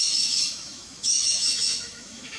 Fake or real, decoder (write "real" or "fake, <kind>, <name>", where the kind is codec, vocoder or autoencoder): fake, autoencoder, DAC-VAE